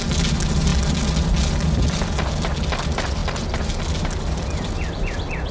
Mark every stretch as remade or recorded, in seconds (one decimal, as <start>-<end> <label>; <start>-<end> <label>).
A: 0.0-5.5 recorded